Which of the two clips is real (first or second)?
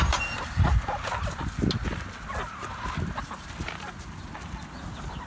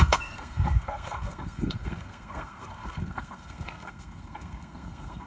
first